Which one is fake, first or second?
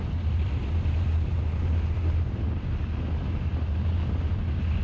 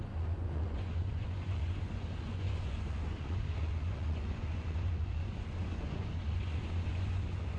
second